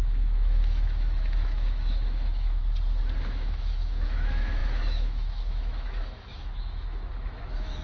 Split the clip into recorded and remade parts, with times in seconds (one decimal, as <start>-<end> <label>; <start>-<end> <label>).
0.0-2.6 remade; 2.6-3.3 recorded; 3.3-7.8 remade